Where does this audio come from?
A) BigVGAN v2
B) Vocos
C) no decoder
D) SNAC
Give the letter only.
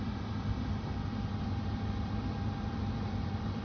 A